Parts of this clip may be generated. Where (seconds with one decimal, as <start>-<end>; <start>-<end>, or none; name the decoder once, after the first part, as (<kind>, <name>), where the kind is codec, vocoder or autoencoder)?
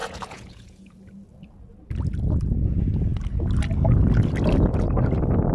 0.0-1.1 (vocoder, Vocos)